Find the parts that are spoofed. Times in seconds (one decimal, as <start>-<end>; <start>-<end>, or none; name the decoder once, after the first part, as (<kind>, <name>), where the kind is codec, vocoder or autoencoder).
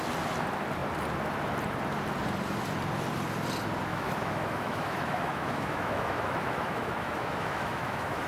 3.9-8.3 (autoencoder, DAC-VAE)